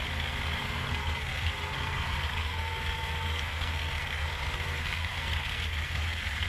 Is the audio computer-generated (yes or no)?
yes